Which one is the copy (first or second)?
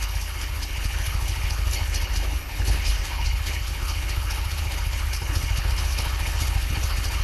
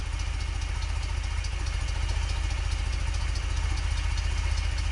first